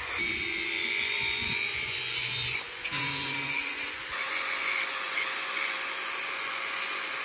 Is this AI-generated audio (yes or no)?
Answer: yes